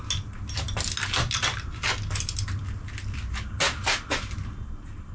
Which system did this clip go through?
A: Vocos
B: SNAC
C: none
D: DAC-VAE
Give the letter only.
C